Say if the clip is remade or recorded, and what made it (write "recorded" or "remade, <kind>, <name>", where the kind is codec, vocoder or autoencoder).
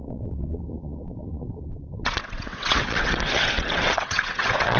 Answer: remade, vocoder, WaveNeXt